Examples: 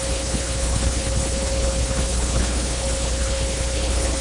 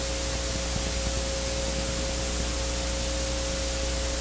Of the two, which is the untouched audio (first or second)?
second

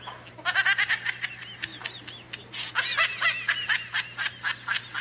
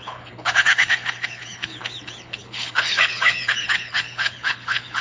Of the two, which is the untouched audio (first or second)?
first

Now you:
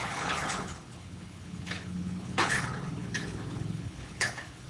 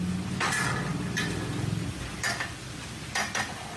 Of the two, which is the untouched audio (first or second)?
second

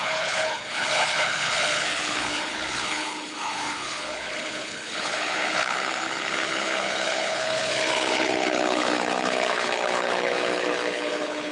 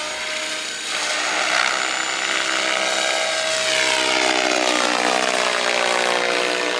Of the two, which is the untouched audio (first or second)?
second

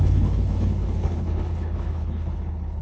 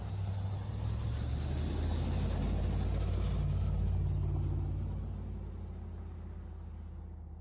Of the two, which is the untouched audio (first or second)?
second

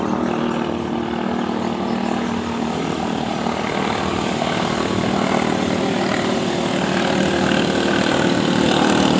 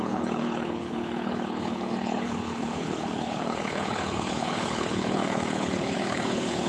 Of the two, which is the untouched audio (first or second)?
first